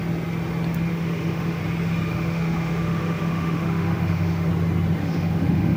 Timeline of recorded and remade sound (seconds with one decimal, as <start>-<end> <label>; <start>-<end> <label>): 0.0-0.9 recorded; 0.9-1.6 remade; 1.6-2.1 recorded; 2.1-4.5 remade; 4.5-5.0 recorded; 5.0-5.8 remade